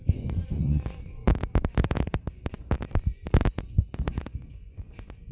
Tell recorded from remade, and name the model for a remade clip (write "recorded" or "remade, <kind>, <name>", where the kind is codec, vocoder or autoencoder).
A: remade, vocoder, Vocos